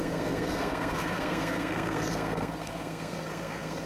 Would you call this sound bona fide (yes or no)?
no